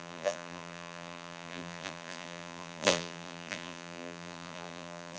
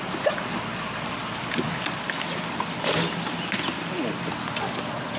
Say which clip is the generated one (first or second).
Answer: first